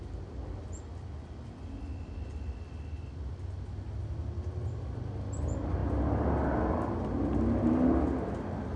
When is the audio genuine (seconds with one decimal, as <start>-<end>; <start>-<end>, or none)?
0.0-8.8